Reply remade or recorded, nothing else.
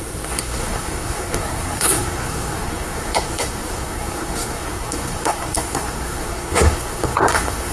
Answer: remade